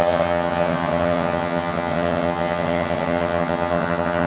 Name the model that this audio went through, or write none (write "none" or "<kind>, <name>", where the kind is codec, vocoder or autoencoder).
vocoder, HiFi-GAN